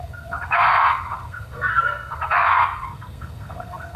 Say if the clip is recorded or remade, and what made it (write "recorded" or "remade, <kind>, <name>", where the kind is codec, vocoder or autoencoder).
remade, codec, SNAC